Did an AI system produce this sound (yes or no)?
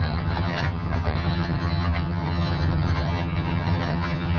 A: yes